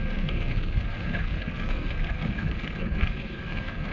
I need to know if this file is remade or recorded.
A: remade